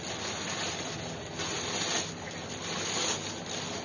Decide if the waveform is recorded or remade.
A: recorded